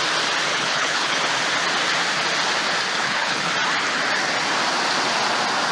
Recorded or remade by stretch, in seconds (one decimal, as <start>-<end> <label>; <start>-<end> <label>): 0.0-0.5 recorded; 0.5-1.2 remade; 1.2-3.0 recorded; 3.0-3.5 remade; 3.5-5.7 recorded